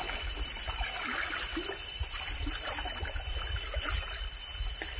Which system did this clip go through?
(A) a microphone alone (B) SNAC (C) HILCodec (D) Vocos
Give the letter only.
A